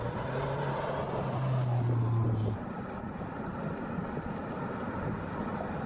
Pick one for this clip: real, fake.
real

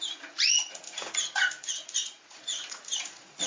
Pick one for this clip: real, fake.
fake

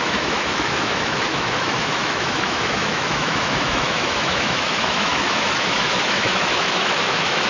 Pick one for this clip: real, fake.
fake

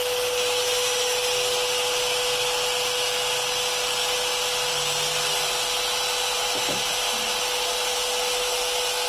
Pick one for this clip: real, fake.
real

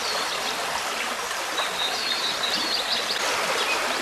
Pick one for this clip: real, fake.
real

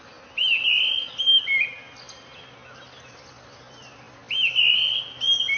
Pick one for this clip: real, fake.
real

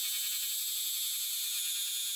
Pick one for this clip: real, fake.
fake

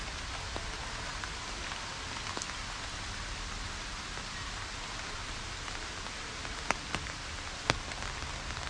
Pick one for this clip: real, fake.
real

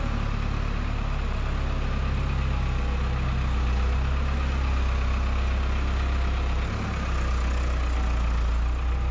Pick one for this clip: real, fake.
real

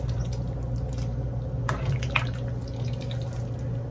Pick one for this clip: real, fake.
real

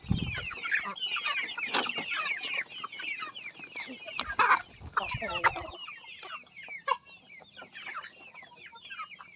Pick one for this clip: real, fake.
real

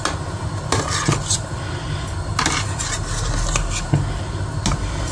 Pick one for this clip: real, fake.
real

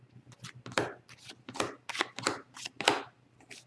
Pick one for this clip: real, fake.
real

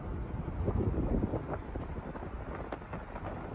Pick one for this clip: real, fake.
real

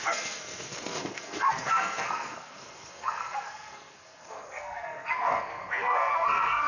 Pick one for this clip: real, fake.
fake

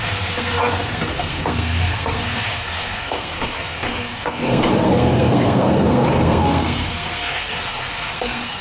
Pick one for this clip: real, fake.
fake